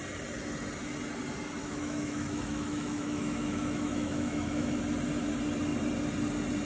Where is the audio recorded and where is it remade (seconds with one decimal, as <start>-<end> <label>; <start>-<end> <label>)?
0.0-1.6 recorded; 1.6-4.8 remade; 4.8-6.7 recorded